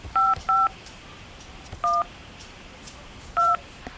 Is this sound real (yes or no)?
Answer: no